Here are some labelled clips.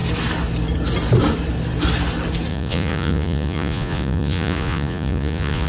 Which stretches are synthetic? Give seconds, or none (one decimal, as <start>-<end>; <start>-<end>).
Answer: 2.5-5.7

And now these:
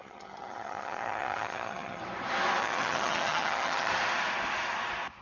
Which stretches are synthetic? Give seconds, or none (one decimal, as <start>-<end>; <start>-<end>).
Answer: 0.0-2.0; 2.6-3.9

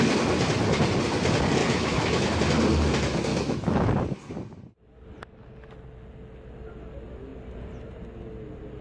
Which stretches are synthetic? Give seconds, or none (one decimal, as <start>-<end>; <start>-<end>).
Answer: 1.6-2.3; 3.3-3.9

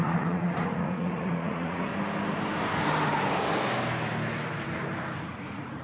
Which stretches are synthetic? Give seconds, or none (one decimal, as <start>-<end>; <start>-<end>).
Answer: 0.0-1.9; 5.2-5.8